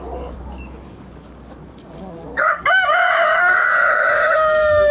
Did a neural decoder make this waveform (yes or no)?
yes